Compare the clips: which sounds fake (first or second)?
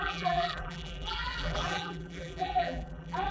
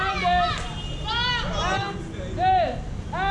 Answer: first